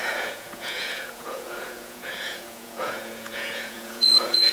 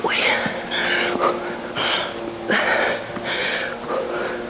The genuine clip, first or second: second